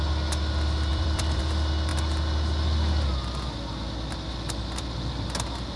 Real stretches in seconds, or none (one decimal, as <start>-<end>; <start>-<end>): 0.0-0.9; 1.4-5.8